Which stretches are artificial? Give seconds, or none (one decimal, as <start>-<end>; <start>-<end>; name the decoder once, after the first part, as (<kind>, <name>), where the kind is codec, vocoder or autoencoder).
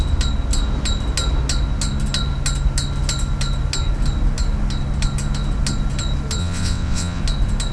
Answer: 6.4-7.2 (vocoder, WaveNeXt)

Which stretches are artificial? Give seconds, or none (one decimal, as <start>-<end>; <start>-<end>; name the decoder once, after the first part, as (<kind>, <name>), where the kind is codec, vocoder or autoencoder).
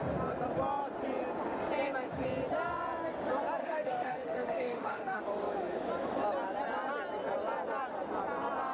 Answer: 3.6-5.2 (autoencoder, DAC-VAE)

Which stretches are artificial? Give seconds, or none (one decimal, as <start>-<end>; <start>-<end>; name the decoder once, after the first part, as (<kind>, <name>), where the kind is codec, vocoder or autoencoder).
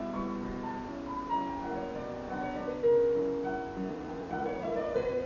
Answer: 3.9-5.3 (vocoder, Vocos)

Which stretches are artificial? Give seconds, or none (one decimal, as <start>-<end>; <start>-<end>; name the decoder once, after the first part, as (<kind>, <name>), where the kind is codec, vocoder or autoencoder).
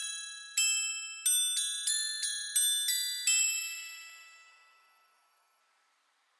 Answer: 3.4-5.6 (autoencoder, DAC-VAE)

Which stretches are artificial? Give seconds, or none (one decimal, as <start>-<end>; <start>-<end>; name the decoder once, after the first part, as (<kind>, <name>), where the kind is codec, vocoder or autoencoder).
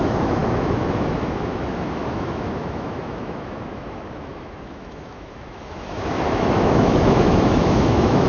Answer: 0.0-8.3 (autoencoder, DAC-VAE)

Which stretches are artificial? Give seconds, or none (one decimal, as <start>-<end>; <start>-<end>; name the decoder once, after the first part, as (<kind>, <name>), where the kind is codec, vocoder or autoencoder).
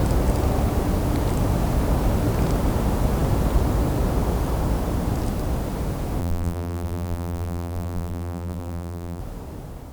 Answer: 6.2-9.2 (vocoder, BigVGAN v2)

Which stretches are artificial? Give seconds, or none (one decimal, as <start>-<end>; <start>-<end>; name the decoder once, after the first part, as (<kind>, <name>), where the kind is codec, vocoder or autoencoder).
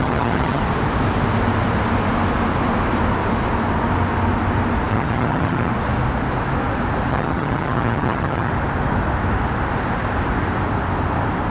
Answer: 0.0-0.6 (vocoder, HiFi-GAN); 4.9-5.7; 7.1-8.5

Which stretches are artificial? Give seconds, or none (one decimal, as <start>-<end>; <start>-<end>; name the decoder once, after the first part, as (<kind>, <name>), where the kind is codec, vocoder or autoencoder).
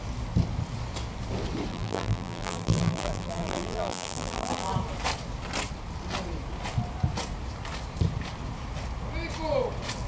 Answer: 1.7-4.7 (vocoder, BigVGAN v2)